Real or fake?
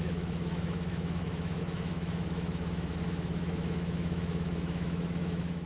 fake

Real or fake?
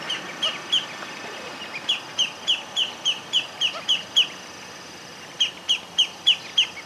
real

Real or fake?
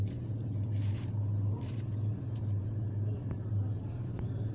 fake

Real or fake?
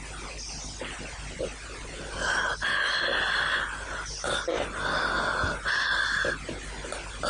real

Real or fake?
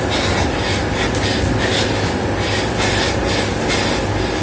real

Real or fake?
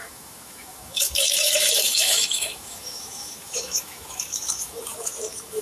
fake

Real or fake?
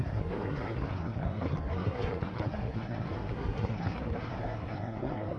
fake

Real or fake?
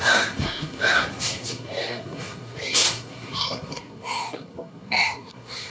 fake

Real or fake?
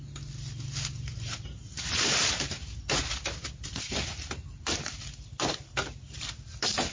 real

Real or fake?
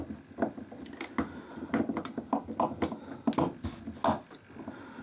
real